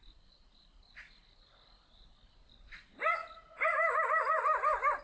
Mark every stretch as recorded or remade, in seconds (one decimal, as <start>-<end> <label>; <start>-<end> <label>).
0.0-5.0 recorded